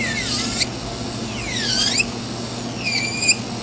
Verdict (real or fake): real